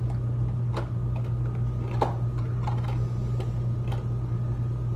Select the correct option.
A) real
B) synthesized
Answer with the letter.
A